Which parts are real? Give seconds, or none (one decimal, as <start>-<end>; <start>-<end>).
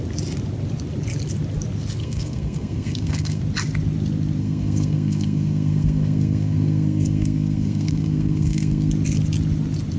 0.0-2.0; 3.4-4.4; 8.9-10.0